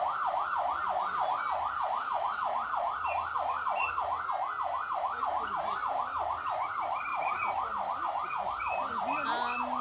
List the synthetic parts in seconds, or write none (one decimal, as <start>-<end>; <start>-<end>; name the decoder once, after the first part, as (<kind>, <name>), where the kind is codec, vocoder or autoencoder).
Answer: none